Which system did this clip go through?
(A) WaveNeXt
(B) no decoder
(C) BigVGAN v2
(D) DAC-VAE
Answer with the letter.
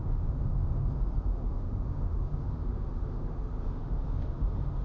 D